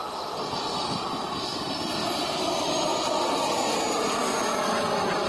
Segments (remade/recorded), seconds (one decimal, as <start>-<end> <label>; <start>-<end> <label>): 0.0-2.0 recorded; 2.0-3.1 remade; 3.1-5.3 recorded